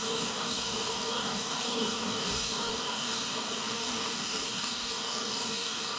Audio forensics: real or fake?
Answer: fake